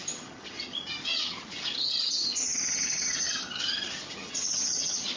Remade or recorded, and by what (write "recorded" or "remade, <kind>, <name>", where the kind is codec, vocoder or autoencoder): remade, vocoder, HiFi-GAN